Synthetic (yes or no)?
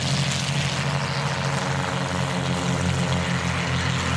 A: no